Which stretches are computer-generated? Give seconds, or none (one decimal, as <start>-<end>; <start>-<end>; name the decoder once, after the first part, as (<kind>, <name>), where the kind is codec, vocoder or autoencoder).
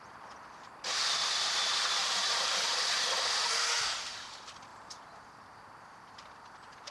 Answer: 1.2-2.6 (vocoder, BigVGAN v2); 4.7-5.3